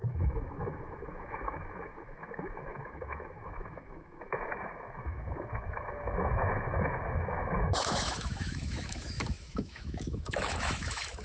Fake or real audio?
fake